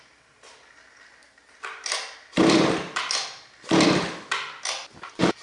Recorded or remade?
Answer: recorded